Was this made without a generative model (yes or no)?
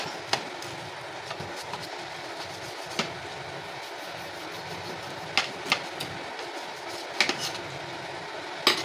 yes